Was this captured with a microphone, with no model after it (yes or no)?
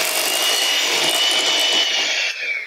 yes